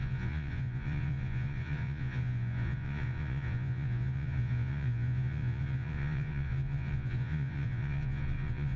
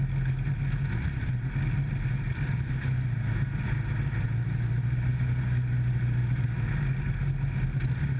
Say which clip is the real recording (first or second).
second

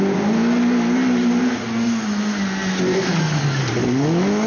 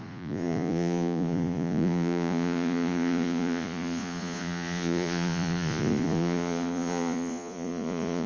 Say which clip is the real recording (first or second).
first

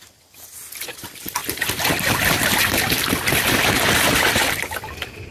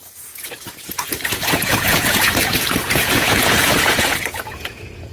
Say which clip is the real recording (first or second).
first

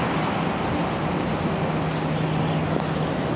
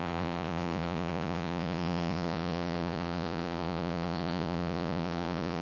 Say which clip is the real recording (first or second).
first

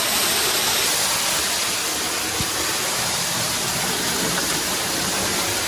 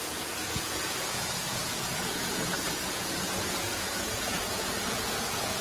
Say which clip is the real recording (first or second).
first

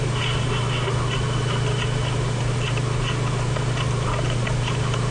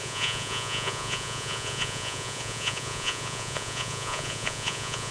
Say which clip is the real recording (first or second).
first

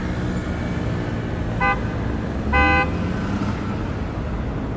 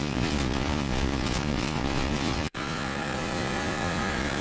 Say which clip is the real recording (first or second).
first